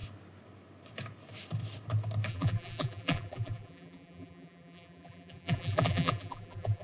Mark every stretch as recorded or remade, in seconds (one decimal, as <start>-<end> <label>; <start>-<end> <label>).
0.0-2.3 recorded; 2.3-6.8 remade